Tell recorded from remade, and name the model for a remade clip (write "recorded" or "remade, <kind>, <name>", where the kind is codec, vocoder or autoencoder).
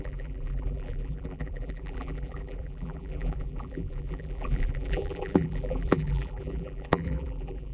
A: remade, vocoder, BigVGAN v2